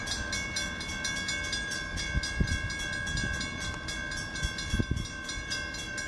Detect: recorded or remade recorded